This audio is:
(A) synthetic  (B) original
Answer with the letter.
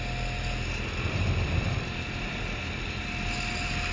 B